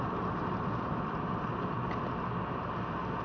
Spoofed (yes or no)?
no